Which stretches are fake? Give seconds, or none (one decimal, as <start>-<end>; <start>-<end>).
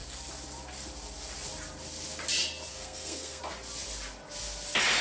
2.7-3.4